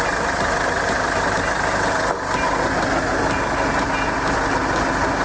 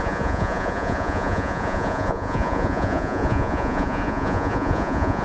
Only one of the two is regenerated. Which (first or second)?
second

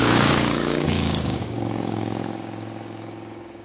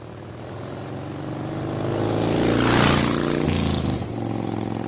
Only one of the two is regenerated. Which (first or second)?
first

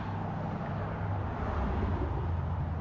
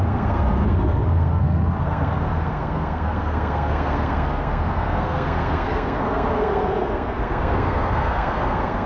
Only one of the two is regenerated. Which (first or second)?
second